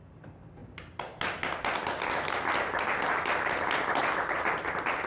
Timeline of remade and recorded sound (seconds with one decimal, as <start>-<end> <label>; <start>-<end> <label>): 0.0-5.1 recorded